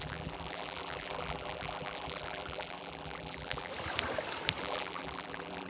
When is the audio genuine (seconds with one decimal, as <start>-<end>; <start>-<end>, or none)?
3.7-4.6